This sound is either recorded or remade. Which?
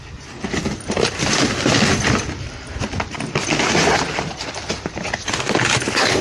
recorded